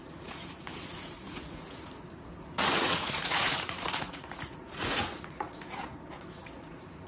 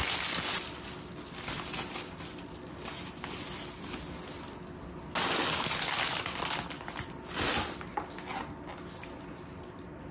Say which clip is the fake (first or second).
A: first